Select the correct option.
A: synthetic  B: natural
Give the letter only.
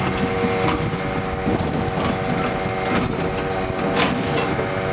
B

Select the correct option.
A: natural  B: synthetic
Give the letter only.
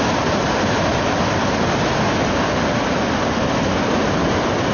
A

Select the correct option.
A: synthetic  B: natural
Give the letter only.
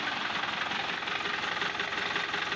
B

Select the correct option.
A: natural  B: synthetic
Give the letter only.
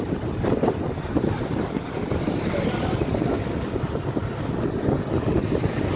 A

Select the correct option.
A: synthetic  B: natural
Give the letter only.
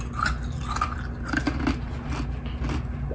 B